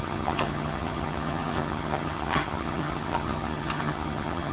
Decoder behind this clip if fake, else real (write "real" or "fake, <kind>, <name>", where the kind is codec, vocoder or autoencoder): fake, vocoder, HiFi-GAN